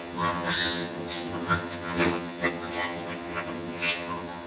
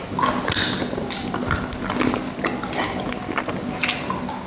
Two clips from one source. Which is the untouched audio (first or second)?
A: second